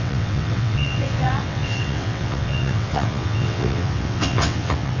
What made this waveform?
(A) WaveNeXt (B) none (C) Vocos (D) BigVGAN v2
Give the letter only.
A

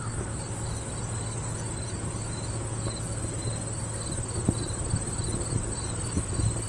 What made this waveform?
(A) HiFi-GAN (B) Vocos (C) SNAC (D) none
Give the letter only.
D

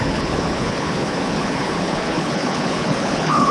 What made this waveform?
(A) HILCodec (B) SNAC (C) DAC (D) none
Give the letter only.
A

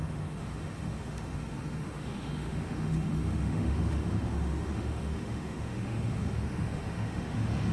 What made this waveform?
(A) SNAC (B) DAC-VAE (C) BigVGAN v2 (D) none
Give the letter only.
B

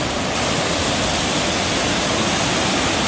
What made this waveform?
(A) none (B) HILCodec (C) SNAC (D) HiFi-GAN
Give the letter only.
A